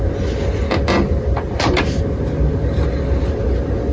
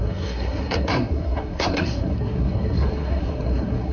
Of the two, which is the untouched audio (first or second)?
first